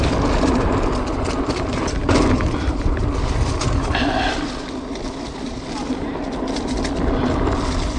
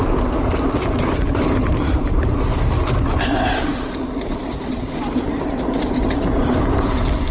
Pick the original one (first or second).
first